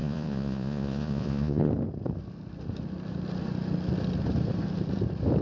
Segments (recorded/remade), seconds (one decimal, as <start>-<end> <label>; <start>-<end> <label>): 0.0-1.7 remade; 1.7-5.4 recorded